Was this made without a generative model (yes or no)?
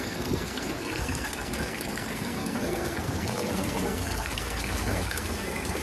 no